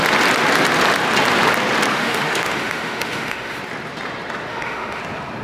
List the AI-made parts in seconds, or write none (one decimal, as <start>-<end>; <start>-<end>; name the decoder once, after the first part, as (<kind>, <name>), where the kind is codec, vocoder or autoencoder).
1.9-3.6 (autoencoder, DAC-VAE); 4.5-5.0